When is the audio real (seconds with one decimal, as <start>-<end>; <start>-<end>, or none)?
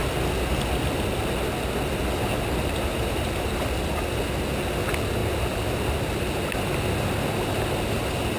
0.0-8.4